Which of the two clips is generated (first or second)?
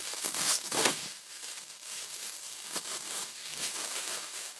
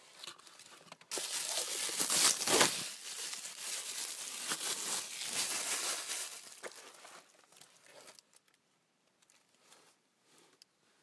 first